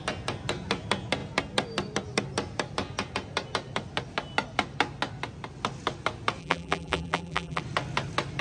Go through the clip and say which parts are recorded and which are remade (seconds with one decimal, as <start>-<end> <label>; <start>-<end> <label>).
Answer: 0.0-6.4 recorded; 6.4-7.6 remade; 7.6-8.4 recorded